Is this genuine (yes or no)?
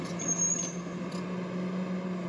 yes